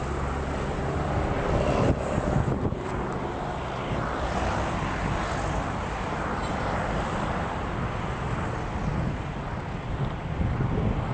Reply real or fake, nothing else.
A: real